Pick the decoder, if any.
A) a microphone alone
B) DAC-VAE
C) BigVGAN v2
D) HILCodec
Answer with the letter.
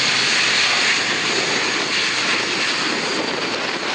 A